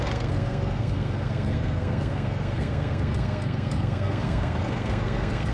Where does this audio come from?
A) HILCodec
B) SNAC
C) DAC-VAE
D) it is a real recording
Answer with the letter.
B